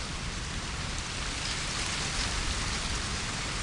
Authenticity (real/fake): real